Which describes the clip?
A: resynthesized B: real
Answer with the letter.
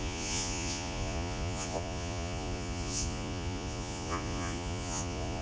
A